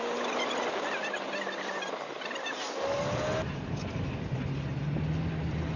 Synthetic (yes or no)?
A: no